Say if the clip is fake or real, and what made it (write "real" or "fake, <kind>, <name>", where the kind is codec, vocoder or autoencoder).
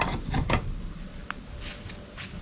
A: real